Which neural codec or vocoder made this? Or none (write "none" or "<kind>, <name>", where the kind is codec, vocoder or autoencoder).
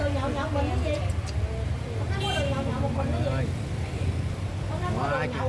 none